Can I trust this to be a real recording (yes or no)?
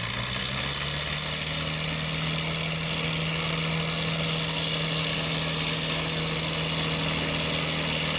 yes